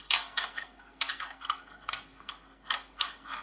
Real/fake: fake